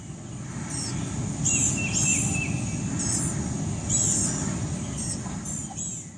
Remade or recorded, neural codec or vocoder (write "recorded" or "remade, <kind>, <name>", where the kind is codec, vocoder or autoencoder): recorded